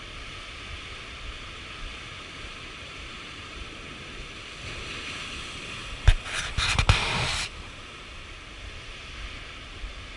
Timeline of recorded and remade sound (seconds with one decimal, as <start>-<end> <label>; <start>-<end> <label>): 0.0-1.9 recorded; 1.9-4.4 remade; 4.4-7.3 recorded; 7.3-8.2 remade; 8.2-10.2 recorded